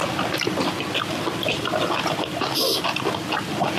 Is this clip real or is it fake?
real